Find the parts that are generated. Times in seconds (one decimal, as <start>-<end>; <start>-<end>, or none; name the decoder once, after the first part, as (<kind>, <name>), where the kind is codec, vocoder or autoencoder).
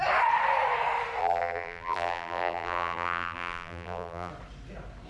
1.2-4.3 (vocoder, BigVGAN v2)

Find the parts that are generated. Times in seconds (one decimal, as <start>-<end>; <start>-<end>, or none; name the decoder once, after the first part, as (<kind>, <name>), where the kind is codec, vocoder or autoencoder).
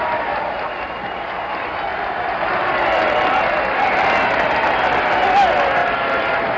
1.9-3.4 (vocoder, BigVGAN v2)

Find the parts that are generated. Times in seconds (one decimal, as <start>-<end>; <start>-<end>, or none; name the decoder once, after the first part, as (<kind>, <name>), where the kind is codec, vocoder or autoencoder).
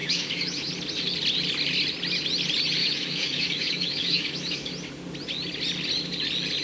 0.0-0.7 (autoencoder, DAC-VAE); 2.8-4.7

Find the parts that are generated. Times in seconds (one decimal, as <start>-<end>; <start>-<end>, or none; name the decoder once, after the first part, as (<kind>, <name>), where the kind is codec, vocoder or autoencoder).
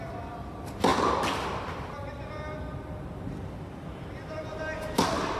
none